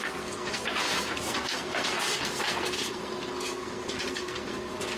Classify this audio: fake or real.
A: fake